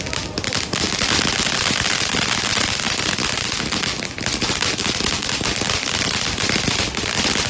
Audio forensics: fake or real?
real